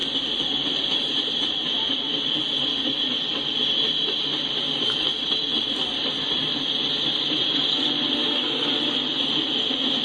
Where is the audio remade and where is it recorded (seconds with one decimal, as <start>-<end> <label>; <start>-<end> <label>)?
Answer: 0.0-8.2 recorded; 8.2-8.7 remade; 8.7-10.0 recorded